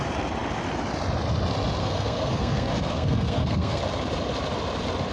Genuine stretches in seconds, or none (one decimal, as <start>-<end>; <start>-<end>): 0.0-1.8; 3.8-5.1